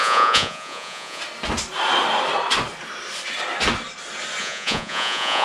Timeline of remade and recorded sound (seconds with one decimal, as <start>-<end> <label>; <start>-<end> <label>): 0.0-1.2 remade; 1.2-4.4 recorded; 4.4-5.4 remade